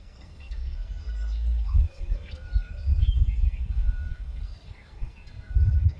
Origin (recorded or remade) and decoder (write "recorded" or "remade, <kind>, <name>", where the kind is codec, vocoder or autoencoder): remade, codec, SNAC